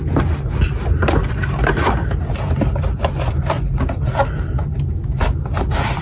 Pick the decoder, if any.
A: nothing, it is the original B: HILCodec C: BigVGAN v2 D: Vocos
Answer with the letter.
A